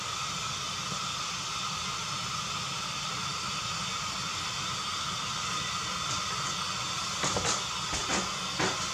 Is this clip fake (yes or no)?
no